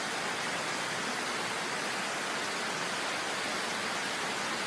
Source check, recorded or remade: recorded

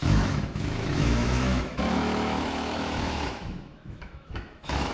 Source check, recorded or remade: remade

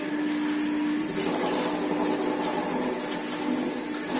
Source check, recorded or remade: recorded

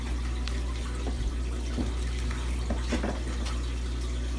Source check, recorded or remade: recorded